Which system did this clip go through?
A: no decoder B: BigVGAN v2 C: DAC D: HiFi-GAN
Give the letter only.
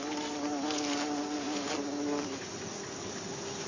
A